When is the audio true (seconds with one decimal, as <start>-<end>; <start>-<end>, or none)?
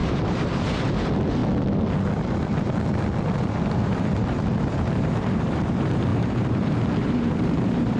1.4-3.6